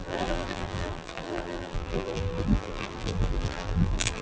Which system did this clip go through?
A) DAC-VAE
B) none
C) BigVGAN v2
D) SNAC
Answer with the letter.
C